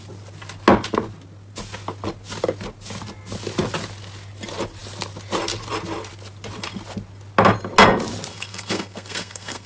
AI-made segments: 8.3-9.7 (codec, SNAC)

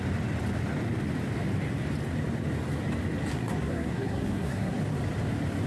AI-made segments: 3.3-4.8 (codec, SNAC)

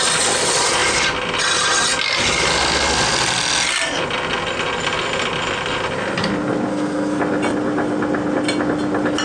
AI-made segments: 6.7-7.2 (codec, SNAC)